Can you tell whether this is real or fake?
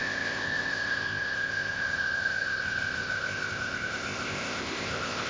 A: fake